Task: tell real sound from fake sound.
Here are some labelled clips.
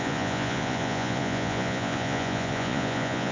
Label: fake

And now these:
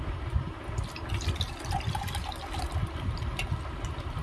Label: real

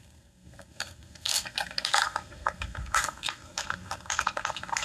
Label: fake